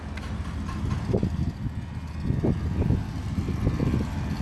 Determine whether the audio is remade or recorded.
recorded